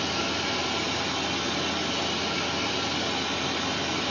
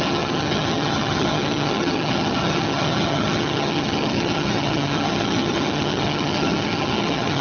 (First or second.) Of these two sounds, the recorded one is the first